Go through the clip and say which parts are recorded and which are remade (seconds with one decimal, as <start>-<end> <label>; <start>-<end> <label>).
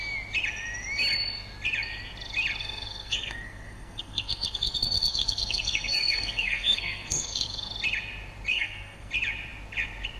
0.0-2.6 recorded; 2.6-7.7 remade; 7.7-8.5 recorded; 8.5-9.1 remade; 9.1-10.2 recorded